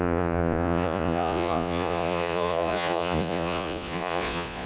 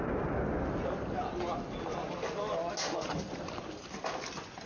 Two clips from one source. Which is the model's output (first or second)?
first